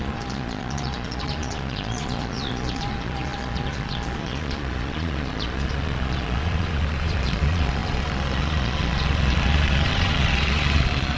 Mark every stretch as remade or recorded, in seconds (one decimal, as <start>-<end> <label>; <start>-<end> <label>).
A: 0.0-11.2 remade